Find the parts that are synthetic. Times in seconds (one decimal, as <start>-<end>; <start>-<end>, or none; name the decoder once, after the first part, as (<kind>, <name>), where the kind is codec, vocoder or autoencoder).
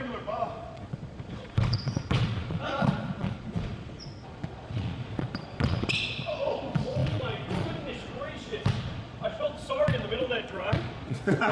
0.0-11.5 (vocoder, Vocos)